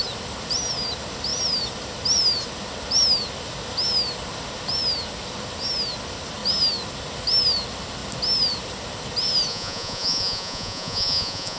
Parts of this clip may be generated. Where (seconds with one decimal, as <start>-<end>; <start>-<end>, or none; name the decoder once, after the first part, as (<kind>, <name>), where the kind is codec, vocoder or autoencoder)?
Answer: 9.5-11.6 (vocoder, Vocos)